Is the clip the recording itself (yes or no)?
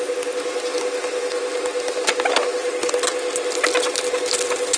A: yes